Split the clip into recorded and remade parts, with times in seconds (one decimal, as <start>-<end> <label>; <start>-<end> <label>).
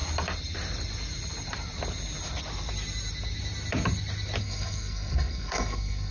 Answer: 0.0-4.4 recorded; 4.4-6.1 remade